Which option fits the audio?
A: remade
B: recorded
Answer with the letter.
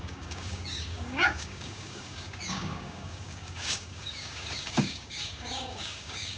A